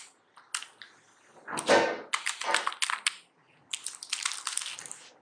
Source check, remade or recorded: recorded